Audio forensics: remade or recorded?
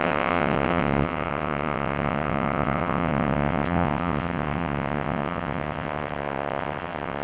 remade